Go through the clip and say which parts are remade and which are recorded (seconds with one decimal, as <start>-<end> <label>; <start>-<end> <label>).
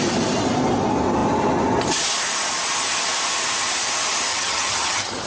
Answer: 0.0-4.3 recorded; 4.3-5.3 remade